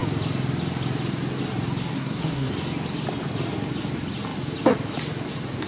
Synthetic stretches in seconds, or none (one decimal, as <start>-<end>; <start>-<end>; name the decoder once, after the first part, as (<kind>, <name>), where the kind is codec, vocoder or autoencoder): 1.9-2.5 (codec, SNAC)